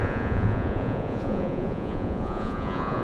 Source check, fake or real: fake